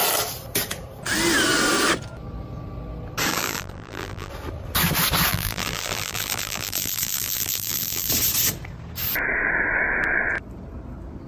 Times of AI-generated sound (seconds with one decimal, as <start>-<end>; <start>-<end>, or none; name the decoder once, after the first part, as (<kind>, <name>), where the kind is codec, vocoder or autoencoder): 3.3-4.3 (vocoder, BigVGAN v2); 5.3-8.1